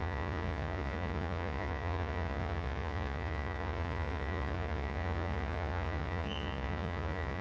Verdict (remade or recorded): remade